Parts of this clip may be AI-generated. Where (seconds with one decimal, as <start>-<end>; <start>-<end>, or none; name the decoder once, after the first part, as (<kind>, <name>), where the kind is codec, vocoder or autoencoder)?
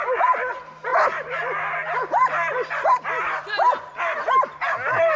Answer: 0.9-4.0 (vocoder, BigVGAN v2)